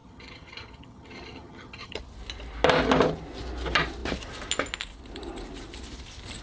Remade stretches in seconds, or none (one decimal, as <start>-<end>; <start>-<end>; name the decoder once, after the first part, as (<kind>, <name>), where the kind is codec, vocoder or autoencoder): 0.0-2.0 (vocoder, HiFi-GAN)